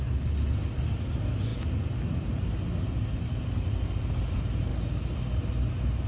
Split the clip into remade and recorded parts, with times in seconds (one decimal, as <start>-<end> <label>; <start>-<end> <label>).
0.0-6.1 recorded